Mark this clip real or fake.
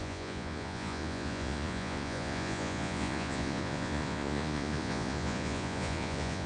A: fake